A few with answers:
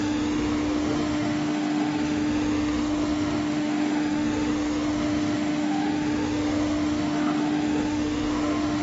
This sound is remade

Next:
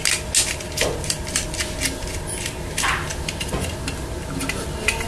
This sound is recorded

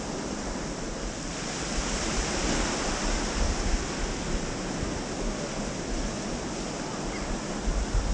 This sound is recorded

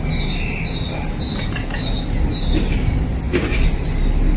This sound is recorded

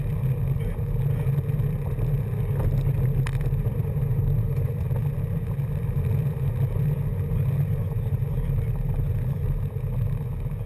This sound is recorded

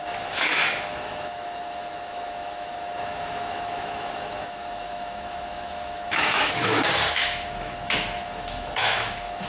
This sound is remade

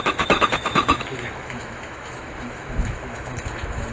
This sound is remade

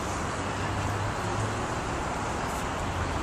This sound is recorded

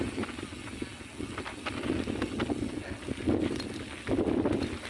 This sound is recorded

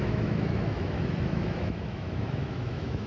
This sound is remade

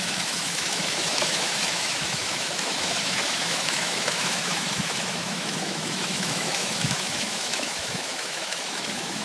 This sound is remade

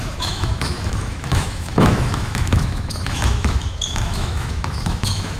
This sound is remade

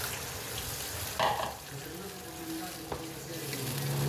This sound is recorded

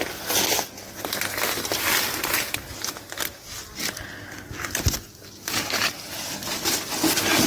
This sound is recorded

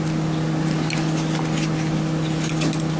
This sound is recorded